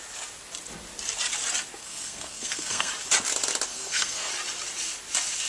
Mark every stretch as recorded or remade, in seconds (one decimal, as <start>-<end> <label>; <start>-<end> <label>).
0.0-1.8 recorded; 1.8-2.9 remade; 2.9-3.7 recorded; 3.7-4.3 remade; 4.3-5.5 recorded